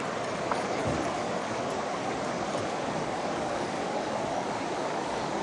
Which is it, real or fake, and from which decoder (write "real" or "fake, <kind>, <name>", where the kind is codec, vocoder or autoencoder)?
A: fake, codec, DAC